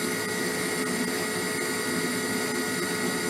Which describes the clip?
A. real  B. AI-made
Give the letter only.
A